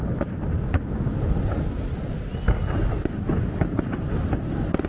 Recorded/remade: recorded